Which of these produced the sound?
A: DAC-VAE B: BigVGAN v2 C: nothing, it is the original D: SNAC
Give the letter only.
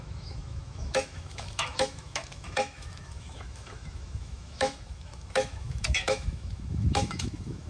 A